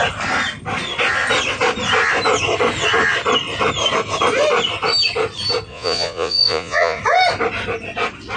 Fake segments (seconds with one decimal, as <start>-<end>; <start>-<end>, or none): 5.7-7.0